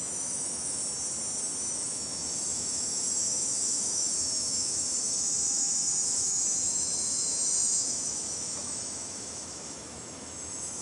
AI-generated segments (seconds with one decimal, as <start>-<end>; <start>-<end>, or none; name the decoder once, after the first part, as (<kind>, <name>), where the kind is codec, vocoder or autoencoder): 0.0-0.8 (autoencoder, DAC-VAE); 1.7-10.8